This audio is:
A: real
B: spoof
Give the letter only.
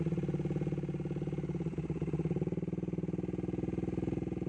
A